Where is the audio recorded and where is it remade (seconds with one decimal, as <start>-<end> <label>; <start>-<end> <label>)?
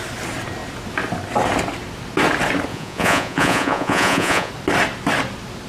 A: 0.0-2.7 recorded; 2.7-4.5 remade; 4.5-5.7 recorded